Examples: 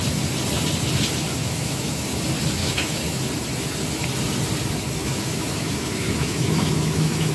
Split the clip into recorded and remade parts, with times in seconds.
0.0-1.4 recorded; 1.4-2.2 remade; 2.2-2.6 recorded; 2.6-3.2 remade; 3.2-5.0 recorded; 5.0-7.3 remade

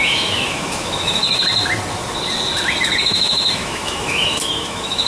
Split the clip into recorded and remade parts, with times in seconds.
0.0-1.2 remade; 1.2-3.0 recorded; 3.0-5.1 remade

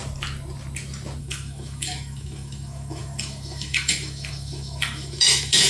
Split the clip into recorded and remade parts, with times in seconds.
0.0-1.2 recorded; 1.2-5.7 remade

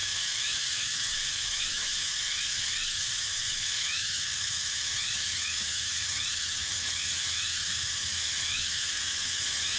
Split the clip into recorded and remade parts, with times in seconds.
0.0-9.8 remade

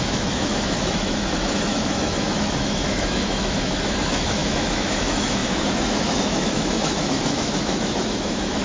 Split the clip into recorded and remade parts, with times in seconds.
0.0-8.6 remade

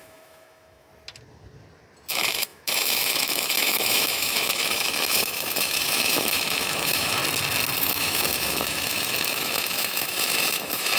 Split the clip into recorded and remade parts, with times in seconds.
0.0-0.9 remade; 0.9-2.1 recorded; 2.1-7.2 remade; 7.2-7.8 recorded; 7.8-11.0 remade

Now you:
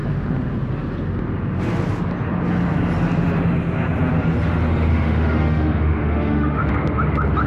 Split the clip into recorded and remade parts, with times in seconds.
0.0-4.9 recorded; 4.9-6.7 remade; 6.7-7.5 recorded

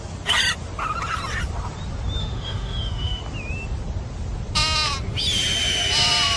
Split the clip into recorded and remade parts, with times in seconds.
0.0-2.2 recorded; 2.2-3.2 remade; 3.2-6.4 recorded